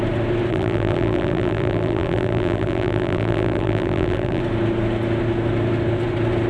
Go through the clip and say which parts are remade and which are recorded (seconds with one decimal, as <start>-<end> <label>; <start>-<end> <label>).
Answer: 0.0-0.5 recorded; 0.5-4.4 remade; 4.4-6.5 recorded